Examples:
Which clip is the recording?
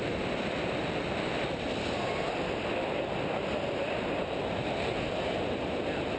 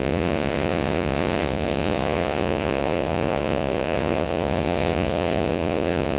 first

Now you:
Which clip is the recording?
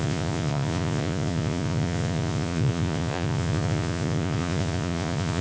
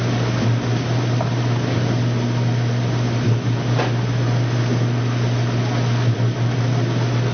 second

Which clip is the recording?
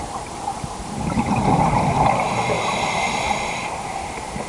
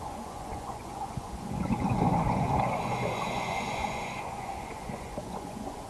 first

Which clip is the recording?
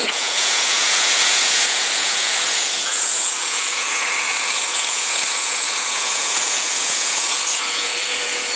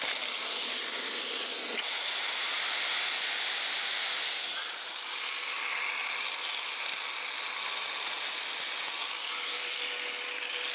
second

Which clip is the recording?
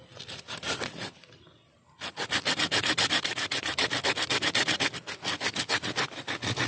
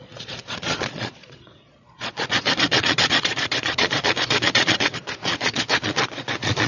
first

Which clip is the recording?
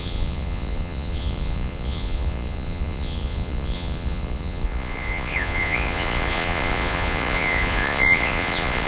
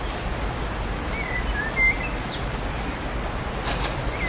second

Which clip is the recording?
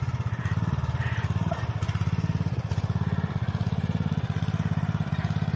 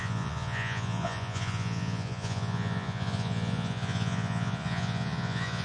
first